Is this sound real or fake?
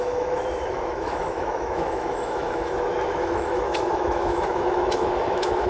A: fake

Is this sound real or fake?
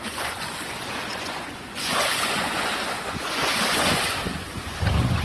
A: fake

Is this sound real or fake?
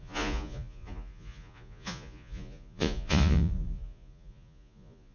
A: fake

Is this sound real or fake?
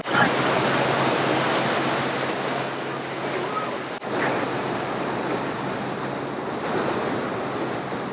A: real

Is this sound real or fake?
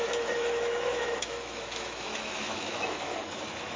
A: fake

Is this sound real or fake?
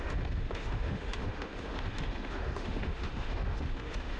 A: fake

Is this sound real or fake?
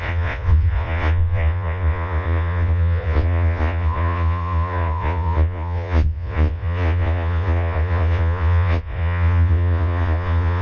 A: fake